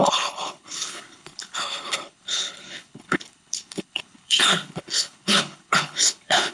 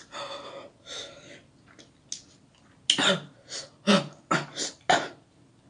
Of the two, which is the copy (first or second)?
first